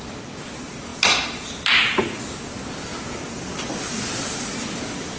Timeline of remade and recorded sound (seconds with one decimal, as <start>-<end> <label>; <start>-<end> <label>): 0.0-5.2 recorded